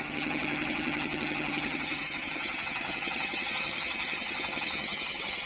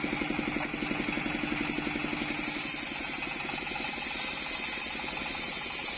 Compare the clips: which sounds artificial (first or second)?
first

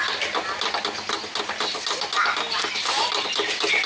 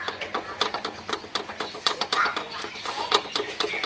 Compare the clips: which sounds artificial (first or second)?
second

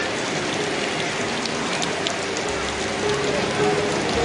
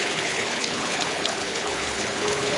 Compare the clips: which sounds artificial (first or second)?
second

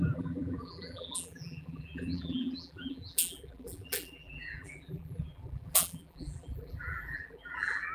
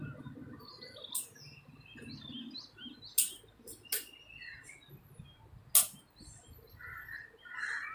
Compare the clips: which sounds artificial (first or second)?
first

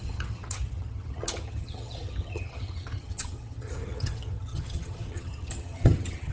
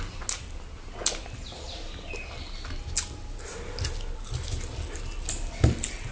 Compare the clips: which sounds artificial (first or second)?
first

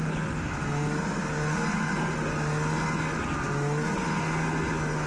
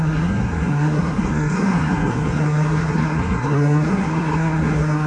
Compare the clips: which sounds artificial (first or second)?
second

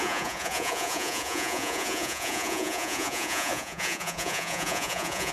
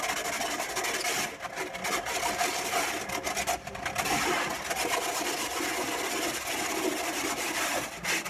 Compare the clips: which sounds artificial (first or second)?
first